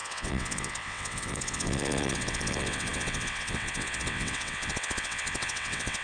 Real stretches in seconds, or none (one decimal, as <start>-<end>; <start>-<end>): none

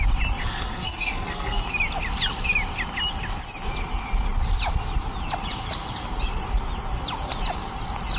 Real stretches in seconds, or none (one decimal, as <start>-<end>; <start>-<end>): 0.0-0.4; 1.6-8.2

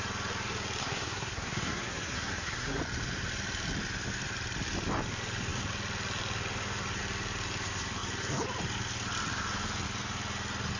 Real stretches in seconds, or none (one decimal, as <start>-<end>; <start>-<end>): 0.0-0.8; 2.8-10.8

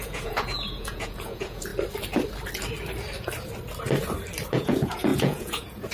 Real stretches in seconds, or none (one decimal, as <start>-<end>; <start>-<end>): 1.7-4.5

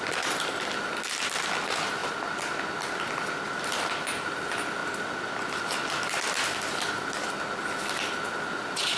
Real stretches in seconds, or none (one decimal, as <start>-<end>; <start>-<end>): 0.0-9.0